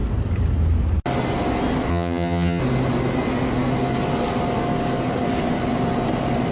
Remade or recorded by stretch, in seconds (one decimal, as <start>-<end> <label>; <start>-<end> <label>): 0.0-1.9 recorded; 1.9-2.6 remade; 2.6-6.5 recorded